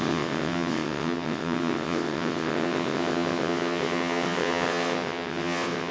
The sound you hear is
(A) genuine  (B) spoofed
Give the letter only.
B